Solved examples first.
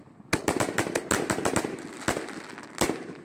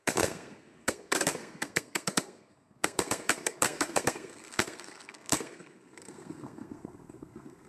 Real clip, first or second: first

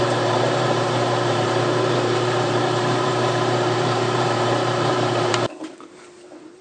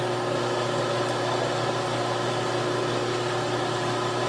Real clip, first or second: second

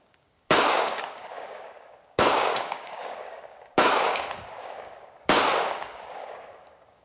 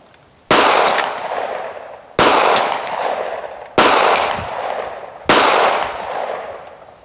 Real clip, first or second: second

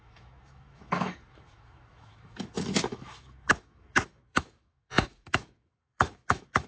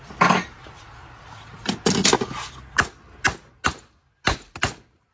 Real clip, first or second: second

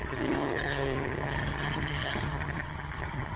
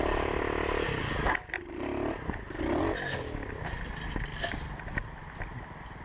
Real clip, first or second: second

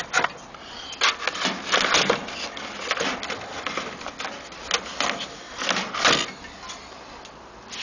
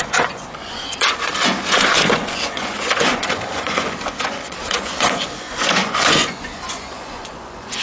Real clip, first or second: first